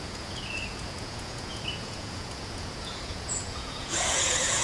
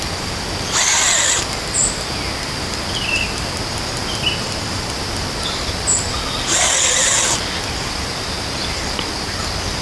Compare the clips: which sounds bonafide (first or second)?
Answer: second